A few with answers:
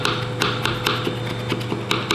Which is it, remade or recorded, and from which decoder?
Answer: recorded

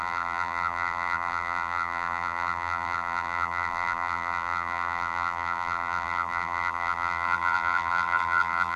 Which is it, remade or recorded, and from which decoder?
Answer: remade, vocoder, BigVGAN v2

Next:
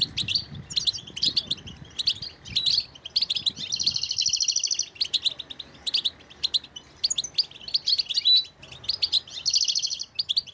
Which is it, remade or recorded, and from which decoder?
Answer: recorded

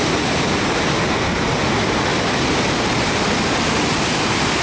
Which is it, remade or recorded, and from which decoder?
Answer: recorded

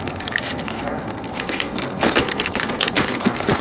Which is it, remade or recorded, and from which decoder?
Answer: remade, codec, SNAC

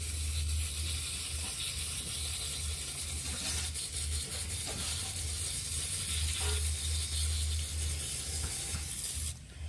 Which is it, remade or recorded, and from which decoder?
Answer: recorded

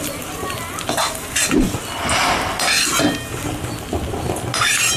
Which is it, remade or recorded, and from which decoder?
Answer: recorded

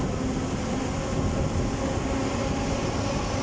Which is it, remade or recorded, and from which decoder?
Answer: recorded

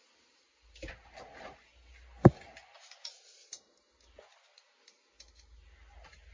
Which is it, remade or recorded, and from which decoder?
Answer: recorded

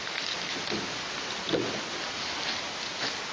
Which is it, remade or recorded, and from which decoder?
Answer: recorded